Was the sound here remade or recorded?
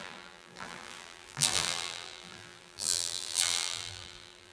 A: remade